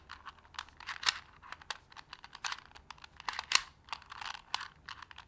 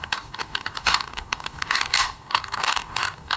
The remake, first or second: second